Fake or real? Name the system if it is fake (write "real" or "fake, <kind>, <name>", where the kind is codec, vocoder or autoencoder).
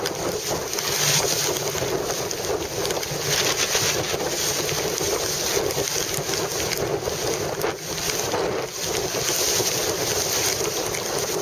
real